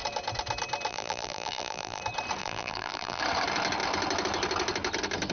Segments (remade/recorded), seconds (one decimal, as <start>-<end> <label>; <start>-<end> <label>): 0.0-0.9 recorded; 0.9-2.0 remade; 2.0-2.4 recorded; 2.4-3.2 remade; 3.2-5.3 recorded